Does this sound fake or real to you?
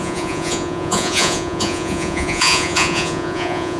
fake